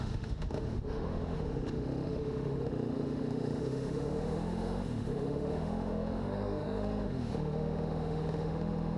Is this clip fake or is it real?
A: fake